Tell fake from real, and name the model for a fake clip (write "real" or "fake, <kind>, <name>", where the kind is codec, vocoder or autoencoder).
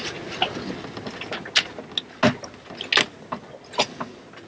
real